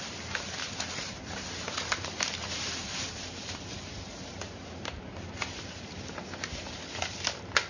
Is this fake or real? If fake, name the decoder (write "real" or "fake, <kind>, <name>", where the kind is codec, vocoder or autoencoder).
fake, vocoder, BigVGAN v2